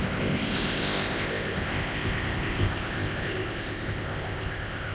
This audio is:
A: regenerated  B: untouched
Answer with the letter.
A